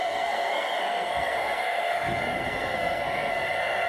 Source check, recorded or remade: remade